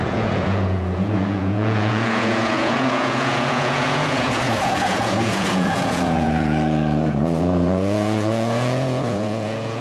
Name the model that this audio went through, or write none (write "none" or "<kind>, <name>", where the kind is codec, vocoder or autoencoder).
vocoder, Vocos